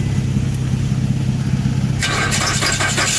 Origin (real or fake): real